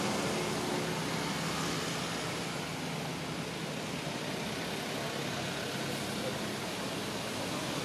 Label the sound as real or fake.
real